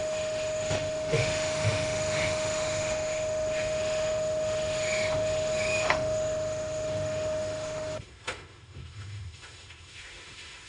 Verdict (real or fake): fake